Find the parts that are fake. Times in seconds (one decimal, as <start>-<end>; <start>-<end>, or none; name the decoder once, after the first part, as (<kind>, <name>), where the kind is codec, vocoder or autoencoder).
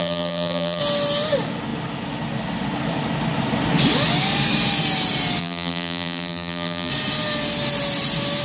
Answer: 0.0-0.8 (vocoder, BigVGAN v2); 5.4-6.9